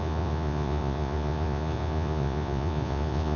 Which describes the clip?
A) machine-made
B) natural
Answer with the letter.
A